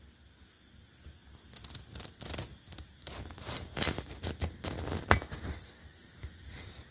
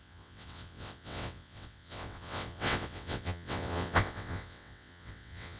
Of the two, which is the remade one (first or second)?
second